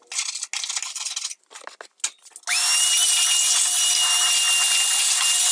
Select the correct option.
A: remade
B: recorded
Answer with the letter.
B